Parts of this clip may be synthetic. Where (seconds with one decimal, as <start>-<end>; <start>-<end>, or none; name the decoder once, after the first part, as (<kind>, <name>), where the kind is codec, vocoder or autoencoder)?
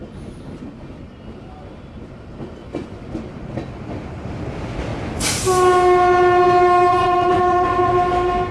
2.6-3.1 (vocoder, Vocos); 6.9-7.9